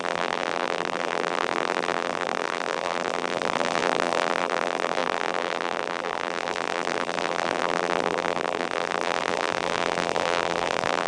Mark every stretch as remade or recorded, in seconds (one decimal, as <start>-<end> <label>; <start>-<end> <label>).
0.0-11.1 remade